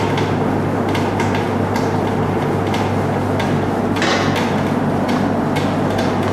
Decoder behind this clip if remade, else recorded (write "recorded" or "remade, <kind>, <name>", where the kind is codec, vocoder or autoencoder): recorded